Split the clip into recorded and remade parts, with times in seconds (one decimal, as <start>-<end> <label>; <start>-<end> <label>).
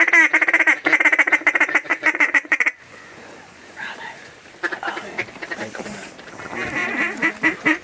0.0-1.9 recorded; 1.9-4.3 remade; 4.3-7.8 recorded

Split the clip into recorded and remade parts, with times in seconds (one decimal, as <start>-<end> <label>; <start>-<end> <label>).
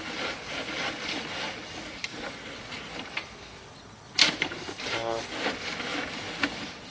0.0-6.9 recorded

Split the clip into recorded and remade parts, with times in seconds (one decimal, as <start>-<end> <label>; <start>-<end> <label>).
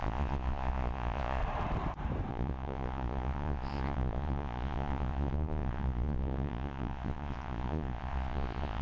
0.0-1.4 remade; 1.4-2.3 recorded; 2.3-8.8 remade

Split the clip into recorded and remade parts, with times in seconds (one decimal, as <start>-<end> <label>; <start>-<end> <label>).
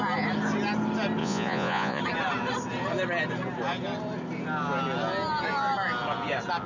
0.0-1.2 recorded; 1.2-2.0 remade; 2.0-6.7 recorded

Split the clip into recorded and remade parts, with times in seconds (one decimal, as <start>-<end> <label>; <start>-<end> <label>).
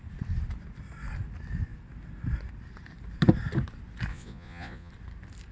0.0-4.1 recorded; 4.1-4.9 remade; 4.9-5.5 recorded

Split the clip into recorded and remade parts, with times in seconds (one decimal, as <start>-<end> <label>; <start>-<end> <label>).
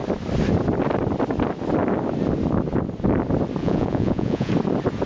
0.0-3.6 recorded; 3.6-4.5 remade; 4.5-5.1 recorded